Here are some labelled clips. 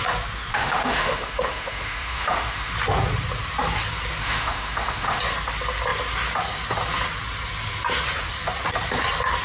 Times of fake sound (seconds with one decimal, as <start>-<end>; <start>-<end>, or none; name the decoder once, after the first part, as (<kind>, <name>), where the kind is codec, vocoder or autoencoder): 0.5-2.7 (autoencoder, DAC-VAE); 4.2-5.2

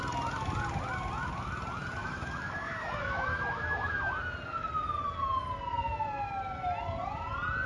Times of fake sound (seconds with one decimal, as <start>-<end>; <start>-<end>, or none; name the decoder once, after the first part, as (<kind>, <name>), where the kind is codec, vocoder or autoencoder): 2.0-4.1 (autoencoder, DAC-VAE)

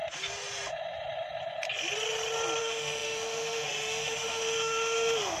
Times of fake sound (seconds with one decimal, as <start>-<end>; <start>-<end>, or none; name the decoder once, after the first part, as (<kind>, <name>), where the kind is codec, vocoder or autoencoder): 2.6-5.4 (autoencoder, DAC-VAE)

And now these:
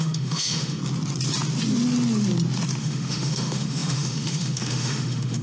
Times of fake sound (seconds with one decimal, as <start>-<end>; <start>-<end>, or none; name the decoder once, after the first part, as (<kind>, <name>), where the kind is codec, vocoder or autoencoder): 0.0-0.8 (autoencoder, DAC-VAE); 2.8-5.4